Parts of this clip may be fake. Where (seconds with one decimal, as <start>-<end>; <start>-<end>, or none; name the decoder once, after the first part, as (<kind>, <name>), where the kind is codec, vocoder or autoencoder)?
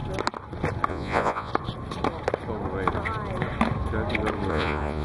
0.9-1.5 (vocoder, Vocos); 4.5-5.0